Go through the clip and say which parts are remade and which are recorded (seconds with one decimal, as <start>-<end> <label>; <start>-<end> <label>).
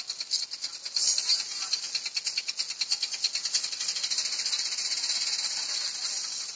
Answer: 0.0-4.8 recorded; 4.8-5.7 remade; 5.7-6.6 recorded